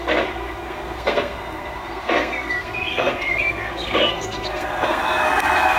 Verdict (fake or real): fake